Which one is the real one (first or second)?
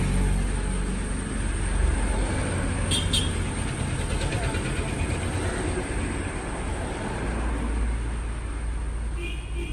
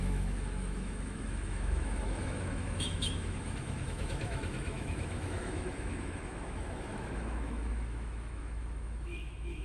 first